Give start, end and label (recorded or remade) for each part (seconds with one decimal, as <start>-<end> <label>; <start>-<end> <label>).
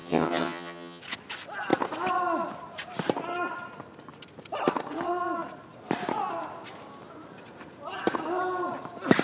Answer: 0.0-1.0 remade; 1.0-9.2 recorded